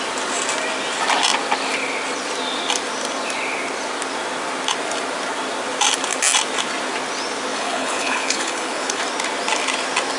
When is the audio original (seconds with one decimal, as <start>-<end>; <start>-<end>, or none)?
0.0-7.5; 9.0-10.2